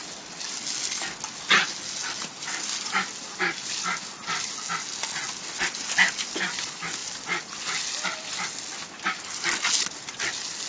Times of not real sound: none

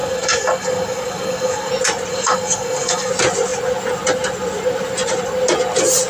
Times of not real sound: 0.0-1.7 (codec, DAC); 2.1-3.1